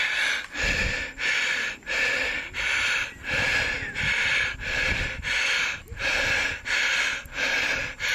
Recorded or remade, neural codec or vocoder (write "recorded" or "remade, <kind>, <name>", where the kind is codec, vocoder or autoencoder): recorded